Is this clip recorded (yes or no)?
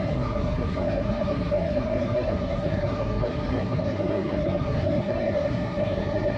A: no